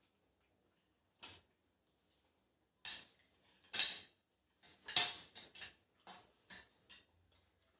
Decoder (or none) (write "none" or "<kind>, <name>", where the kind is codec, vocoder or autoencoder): none